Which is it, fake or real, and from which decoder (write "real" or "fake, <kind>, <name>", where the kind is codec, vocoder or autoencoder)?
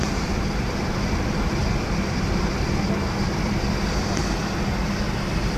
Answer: real